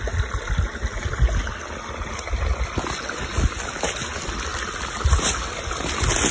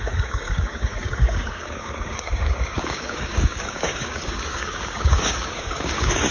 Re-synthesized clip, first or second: second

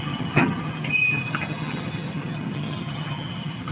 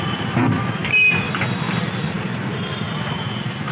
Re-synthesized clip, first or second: first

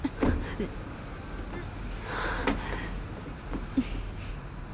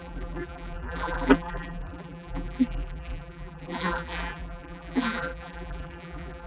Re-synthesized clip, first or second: second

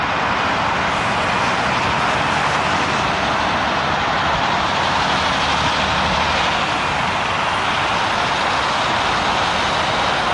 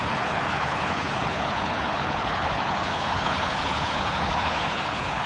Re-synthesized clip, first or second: second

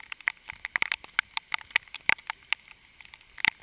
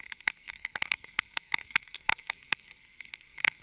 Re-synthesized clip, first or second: second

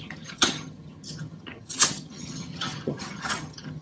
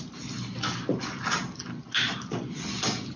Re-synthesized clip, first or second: first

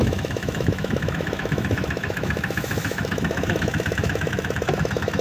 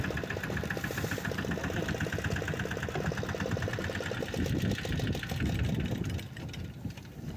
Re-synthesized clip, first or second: first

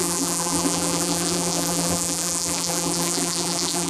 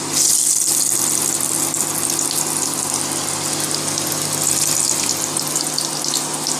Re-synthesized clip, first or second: first